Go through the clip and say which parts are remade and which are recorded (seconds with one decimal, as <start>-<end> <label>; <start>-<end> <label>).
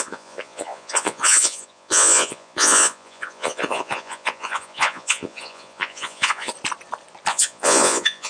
0.0-6.5 remade; 6.5-7.3 recorded; 7.3-8.3 remade